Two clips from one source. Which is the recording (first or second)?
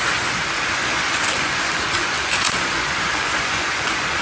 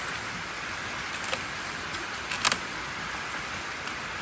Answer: second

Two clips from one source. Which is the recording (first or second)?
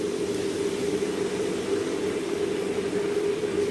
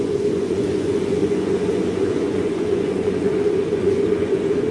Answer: first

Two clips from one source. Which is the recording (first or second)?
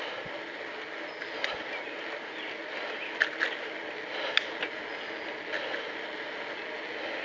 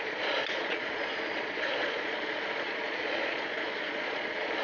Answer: first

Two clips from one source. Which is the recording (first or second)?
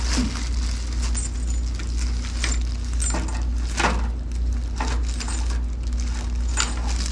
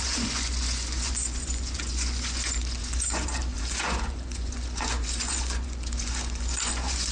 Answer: first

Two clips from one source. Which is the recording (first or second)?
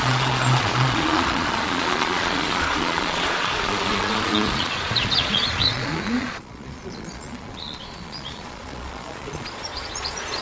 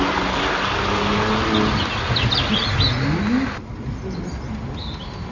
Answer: second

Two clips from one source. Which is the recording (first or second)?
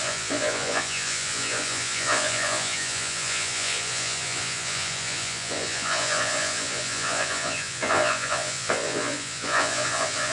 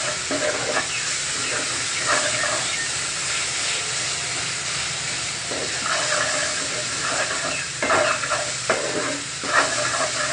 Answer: second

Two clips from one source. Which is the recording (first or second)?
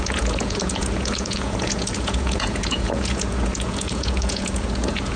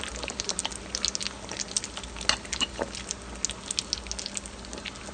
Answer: second